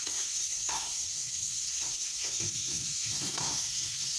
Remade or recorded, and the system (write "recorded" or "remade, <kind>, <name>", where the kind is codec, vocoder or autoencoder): remade, codec, SNAC